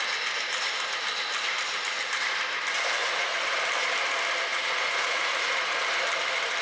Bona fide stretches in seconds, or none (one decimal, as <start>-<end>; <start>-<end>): 0.0-3.0; 3.6-4.5; 5.8-6.6